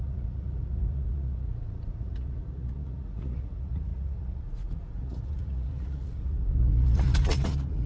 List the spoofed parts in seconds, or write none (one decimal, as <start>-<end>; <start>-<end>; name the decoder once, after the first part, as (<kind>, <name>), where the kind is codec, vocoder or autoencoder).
0.0-7.9 (vocoder, Vocos)

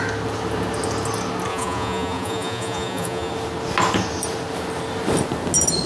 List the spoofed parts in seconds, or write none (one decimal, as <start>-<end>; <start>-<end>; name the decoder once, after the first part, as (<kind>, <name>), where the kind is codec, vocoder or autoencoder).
1.5-3.3 (vocoder, Vocos)

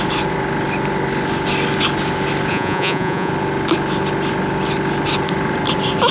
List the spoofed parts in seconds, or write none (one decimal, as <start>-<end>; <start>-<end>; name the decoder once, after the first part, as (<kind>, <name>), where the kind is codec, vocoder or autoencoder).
2.5-3.3 (vocoder, Vocos)

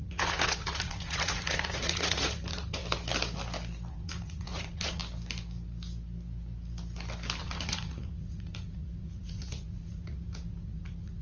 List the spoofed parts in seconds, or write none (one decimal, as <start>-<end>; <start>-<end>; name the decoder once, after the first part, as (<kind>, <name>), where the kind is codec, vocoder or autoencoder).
0.0-2.8 (vocoder, Vocos); 3.9-5.0; 7.4-11.2

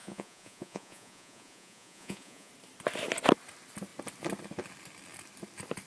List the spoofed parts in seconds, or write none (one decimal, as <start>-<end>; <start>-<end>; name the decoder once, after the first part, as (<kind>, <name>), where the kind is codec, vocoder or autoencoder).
0.0-2.5 (vocoder, Vocos)

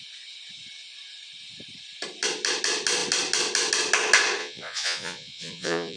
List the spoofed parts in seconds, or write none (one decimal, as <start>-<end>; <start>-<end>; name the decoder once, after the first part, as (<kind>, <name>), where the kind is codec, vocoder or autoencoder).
4.4-6.0 (vocoder, Vocos)

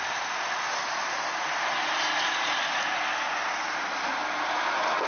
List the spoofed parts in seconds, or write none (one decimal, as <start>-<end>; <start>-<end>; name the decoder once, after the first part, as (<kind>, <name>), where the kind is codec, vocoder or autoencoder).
none

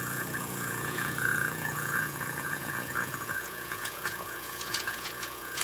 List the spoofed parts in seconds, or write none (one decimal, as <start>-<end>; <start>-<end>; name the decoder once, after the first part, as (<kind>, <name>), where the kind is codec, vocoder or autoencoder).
0.0-5.6 (vocoder, Vocos)